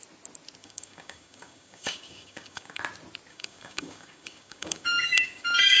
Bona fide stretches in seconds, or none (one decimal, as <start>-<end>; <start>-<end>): 0.0-0.6; 2.8-3.3